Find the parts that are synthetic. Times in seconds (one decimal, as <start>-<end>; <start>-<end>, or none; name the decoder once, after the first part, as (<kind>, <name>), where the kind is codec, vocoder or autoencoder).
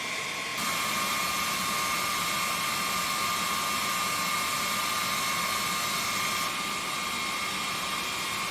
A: 0.5-1.3 (vocoder, BigVGAN v2)